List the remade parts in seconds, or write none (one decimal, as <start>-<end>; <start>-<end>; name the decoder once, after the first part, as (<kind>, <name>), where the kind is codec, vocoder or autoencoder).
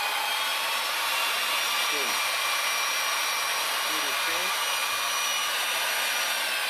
0.5-1.4 (vocoder, BigVGAN v2)